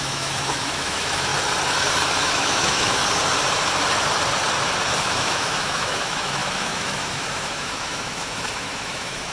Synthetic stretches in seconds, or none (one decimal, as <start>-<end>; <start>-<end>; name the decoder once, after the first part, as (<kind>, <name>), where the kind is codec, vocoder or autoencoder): 0.0-1.3 (autoencoder, DAC-VAE); 2.2-3.0; 5.0-9.3